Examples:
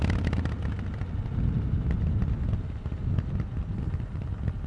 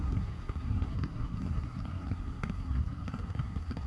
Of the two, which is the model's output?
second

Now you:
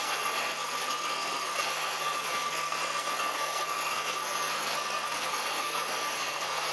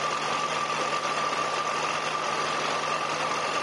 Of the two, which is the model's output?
first